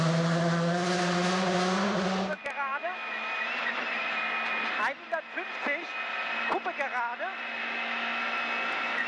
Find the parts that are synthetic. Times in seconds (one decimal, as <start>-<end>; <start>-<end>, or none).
7.6-8.2